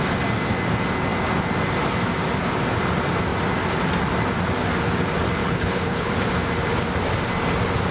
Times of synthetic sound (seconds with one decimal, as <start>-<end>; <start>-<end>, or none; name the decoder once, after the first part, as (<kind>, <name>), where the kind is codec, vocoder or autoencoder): 5.4-6.1 (codec, HILCodec)